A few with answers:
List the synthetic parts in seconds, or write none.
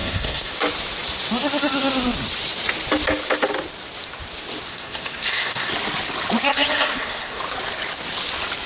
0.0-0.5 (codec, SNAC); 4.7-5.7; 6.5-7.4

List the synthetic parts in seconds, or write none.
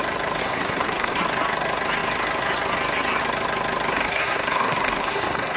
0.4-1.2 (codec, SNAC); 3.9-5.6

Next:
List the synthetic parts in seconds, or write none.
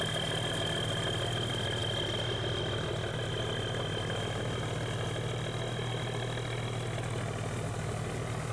none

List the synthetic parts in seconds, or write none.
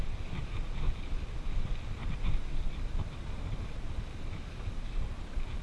none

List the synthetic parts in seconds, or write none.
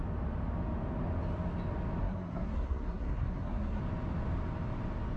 2.0-3.8 (codec, SNAC)